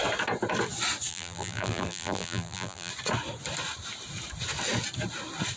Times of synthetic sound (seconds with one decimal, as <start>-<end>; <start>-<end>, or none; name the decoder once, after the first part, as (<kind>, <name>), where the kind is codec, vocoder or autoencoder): 1.1-2.9 (vocoder, BigVGAN v2)